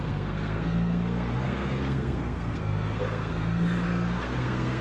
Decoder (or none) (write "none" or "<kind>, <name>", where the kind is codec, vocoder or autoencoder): codec, SNAC